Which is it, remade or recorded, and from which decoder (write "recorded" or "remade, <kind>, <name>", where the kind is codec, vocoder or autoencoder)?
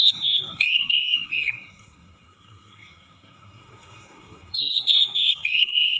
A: remade, codec, SNAC